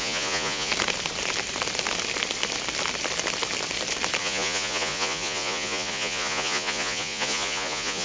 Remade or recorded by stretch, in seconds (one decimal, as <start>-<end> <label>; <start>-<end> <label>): 0.0-0.7 remade; 0.7-4.2 recorded; 4.2-8.0 remade